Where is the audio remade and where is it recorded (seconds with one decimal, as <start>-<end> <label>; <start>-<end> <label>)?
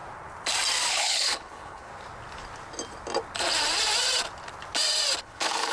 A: 0.0-0.9 recorded; 0.9-1.9 remade; 1.9-5.2 recorded; 5.2-5.7 remade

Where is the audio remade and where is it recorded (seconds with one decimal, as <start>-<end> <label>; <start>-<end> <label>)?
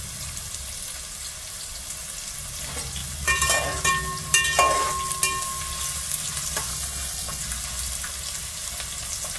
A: 0.0-6.7 recorded; 6.7-7.4 remade; 7.4-9.4 recorded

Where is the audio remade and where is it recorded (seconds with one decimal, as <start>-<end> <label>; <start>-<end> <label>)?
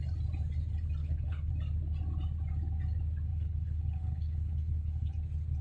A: 0.0-1.0 recorded; 1.0-1.5 remade; 1.5-3.3 recorded; 3.3-5.1 remade; 5.1-5.6 recorded